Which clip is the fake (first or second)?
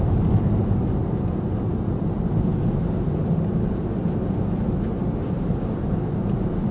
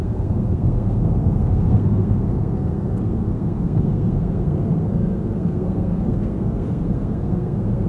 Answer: second